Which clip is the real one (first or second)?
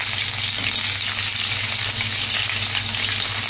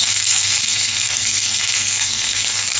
first